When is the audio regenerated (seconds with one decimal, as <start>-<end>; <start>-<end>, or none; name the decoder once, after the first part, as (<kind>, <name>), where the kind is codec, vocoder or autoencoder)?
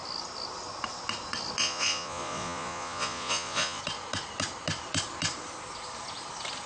1.6-3.8 (vocoder, Vocos)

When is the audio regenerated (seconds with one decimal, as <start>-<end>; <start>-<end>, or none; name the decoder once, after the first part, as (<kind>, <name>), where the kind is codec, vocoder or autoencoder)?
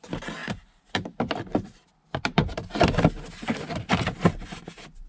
0.4-3.1 (vocoder, BigVGAN v2)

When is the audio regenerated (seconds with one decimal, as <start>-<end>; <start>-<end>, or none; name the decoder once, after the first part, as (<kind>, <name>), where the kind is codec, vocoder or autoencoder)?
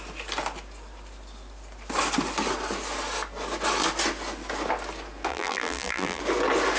5.3-6.2 (vocoder, BigVGAN v2)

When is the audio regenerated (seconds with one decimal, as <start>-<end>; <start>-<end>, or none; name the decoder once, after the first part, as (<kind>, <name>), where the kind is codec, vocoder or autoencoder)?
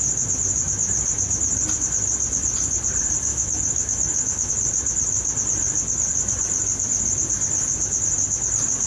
3.3-4.5 (autoencoder, DAC-VAE)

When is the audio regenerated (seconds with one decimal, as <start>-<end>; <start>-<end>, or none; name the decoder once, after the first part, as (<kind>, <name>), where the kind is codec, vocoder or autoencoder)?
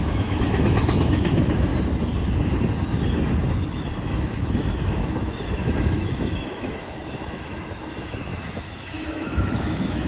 0.0-1.7 (autoencoder, DAC-VAE); 4.1-10.1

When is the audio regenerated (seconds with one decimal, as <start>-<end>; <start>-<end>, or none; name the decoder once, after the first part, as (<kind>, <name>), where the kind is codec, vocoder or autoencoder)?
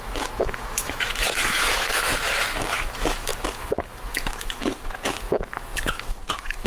0.0-2.1 (autoencoder, DAC-VAE); 2.6-6.7